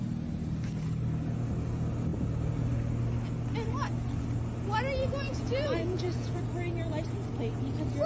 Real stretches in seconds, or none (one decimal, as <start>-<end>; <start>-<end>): 0.0-5.0; 6.4-8.1